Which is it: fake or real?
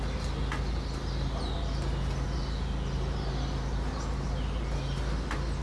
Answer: real